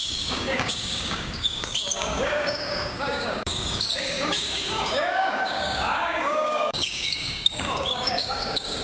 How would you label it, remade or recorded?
remade